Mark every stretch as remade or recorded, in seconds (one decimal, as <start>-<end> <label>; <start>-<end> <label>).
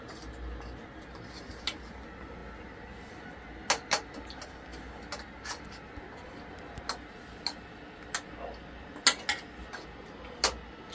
0.0-10.9 recorded